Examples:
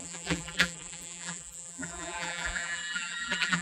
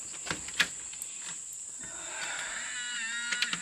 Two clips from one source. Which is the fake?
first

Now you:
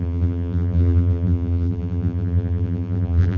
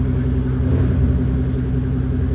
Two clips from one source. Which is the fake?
first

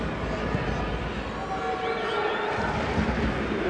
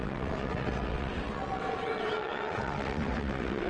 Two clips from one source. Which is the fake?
second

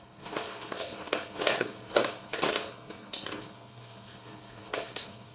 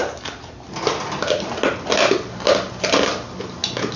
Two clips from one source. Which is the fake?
first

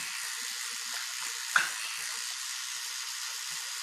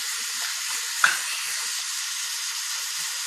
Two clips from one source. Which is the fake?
second